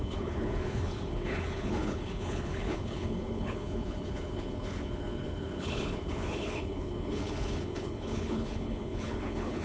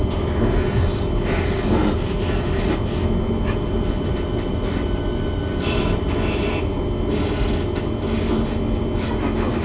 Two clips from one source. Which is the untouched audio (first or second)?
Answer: second